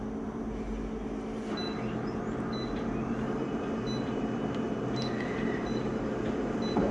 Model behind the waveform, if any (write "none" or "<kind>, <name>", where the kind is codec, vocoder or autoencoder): vocoder, BigVGAN v2